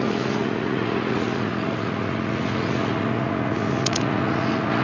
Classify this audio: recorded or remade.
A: remade